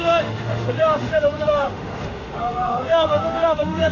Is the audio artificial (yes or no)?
yes